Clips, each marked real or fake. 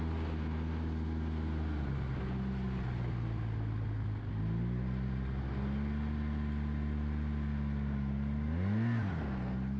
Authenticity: real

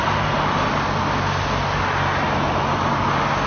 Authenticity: real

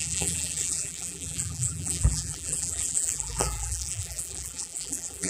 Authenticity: fake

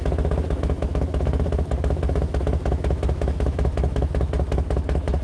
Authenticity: fake